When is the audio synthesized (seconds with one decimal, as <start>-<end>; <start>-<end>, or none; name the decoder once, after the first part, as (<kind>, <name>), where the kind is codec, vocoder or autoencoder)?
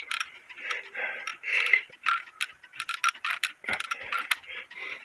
none